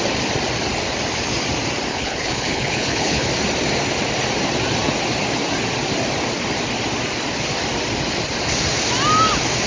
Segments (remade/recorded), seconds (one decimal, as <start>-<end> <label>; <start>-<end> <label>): 0.0-1.9 recorded; 1.9-3.3 remade; 3.3-9.7 recorded